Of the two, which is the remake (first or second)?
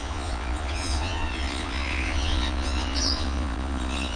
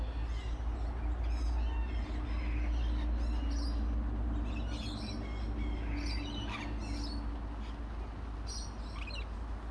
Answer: first